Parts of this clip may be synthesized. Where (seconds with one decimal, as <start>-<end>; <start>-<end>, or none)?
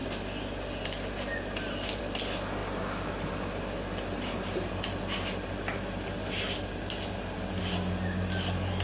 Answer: none